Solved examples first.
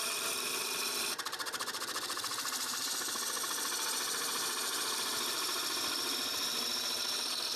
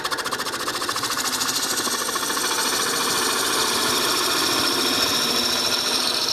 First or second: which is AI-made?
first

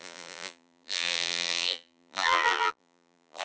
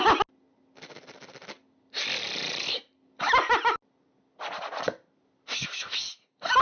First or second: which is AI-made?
first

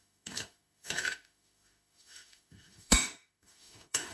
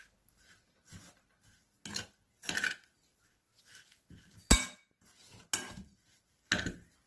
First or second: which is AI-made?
first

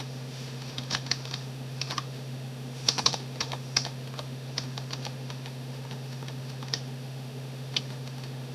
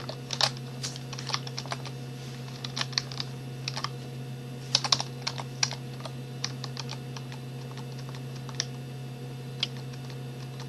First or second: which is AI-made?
first